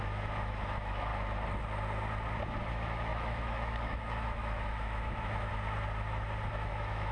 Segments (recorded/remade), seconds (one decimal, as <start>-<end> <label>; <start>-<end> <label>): 0.0-1.1 remade; 1.1-2.7 recorded; 2.7-5.5 remade; 5.5-6.5 recorded; 6.5-7.1 remade